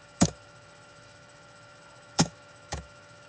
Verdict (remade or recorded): remade